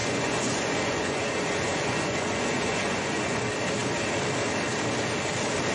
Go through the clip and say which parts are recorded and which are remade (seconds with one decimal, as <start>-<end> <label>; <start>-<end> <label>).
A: 0.0-3.4 remade; 3.4-5.7 recorded